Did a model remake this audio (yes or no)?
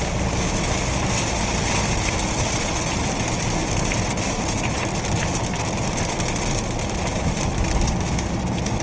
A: no